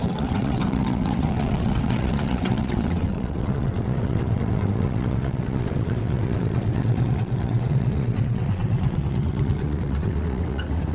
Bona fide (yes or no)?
no